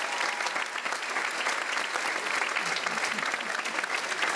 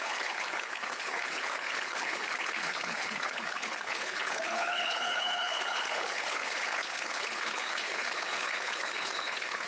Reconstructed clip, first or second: second